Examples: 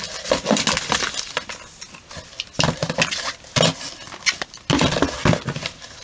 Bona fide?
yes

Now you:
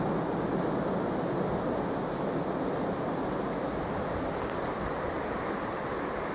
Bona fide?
yes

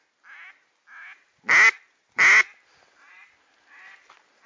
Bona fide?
yes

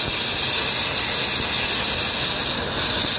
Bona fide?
yes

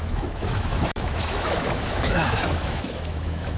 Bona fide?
no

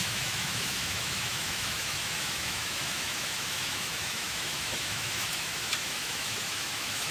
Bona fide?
no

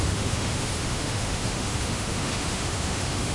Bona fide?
no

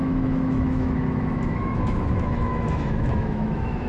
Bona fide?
no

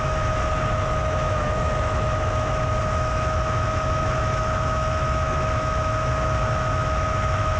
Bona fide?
no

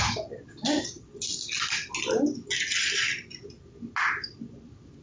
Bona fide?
yes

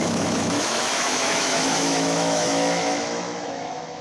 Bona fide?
no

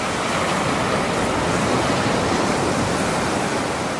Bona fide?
yes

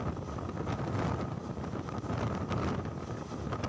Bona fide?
yes